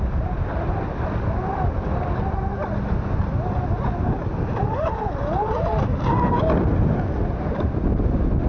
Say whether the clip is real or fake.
real